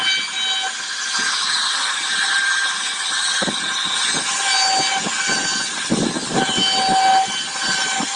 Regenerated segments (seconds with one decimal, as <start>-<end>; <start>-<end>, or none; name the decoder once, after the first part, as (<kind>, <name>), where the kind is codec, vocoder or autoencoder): 4.9-6.6 (vocoder, BigVGAN v2); 7.5-8.2